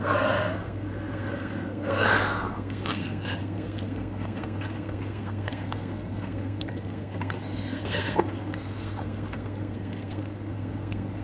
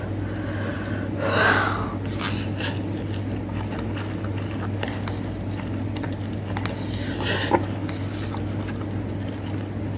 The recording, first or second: second